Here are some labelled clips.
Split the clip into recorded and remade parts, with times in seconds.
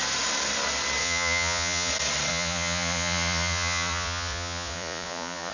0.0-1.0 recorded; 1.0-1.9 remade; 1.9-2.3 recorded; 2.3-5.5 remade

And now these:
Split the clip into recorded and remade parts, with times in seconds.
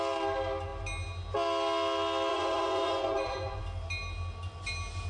0.0-2.3 recorded; 2.3-3.6 remade; 3.6-5.1 recorded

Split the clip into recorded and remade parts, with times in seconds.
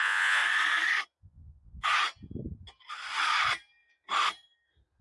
0.0-0.4 remade; 0.4-1.2 recorded; 1.2-1.7 remade; 1.7-5.0 recorded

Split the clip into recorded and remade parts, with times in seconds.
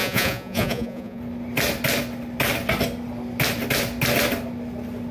0.0-1.2 remade; 1.2-5.1 recorded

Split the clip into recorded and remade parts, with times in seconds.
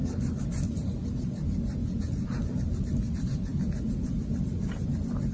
0.0-1.8 recorded; 1.8-2.4 remade; 2.4-5.3 recorded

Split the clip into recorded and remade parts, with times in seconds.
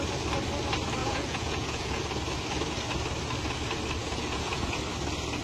0.0-1.0 recorded; 1.0-2.0 remade; 2.0-4.0 recorded; 4.0-4.8 remade; 4.8-5.4 recorded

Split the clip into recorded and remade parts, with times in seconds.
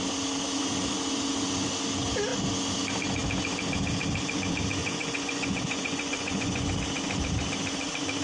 0.0-4.8 recorded; 4.8-6.7 remade; 6.7-8.2 recorded